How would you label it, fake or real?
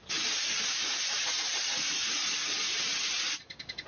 fake